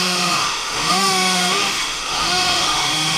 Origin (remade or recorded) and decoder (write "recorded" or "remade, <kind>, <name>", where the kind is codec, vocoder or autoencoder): remade, autoencoder, DAC-VAE